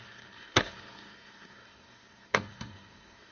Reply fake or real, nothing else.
fake